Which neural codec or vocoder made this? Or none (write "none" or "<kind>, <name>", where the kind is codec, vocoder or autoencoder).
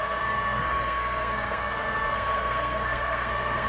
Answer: codec, SNAC